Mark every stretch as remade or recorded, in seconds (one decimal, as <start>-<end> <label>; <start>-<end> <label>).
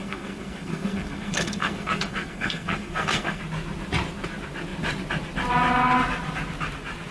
0.0-3.4 remade; 3.4-7.1 recorded